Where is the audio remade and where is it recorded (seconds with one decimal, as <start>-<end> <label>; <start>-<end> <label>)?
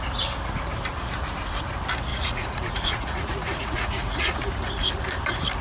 0.0-2.1 recorded; 2.1-4.4 remade; 4.4-5.6 recorded